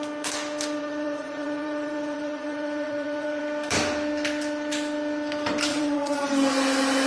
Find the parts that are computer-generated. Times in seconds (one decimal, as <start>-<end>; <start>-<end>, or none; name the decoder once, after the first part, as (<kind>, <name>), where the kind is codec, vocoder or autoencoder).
0.8-3.4 (vocoder, Vocos); 5.7-6.3